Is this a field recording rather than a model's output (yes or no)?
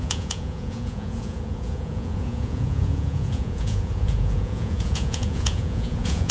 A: no